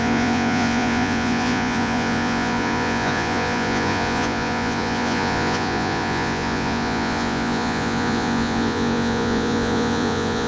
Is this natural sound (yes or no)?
no